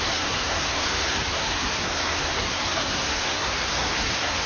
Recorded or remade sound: remade